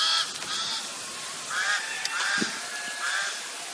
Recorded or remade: recorded